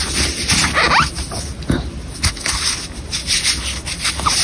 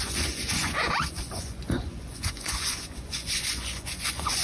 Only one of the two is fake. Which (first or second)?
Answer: second